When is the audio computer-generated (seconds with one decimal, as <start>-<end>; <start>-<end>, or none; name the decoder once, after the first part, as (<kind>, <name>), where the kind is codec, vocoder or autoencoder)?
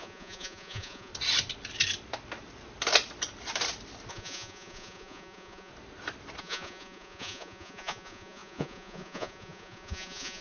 0.0-1.1 (vocoder, Vocos); 4.1-5.7; 6.4-10.4